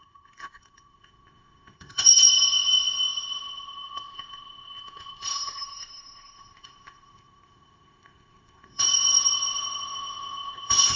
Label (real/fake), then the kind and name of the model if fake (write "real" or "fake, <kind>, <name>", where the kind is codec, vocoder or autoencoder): fake, codec, ZipCodec